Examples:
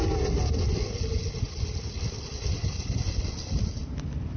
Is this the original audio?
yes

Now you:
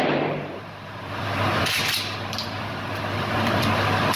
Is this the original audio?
no